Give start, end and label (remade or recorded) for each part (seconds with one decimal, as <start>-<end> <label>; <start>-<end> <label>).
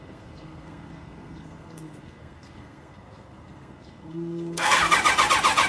0.0-4.8 remade; 4.8-5.7 recorded